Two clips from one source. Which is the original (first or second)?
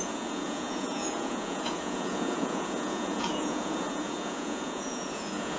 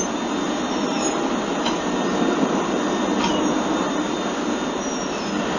second